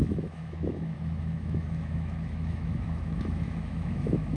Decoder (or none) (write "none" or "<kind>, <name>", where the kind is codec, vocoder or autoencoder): autoencoder, DAC-VAE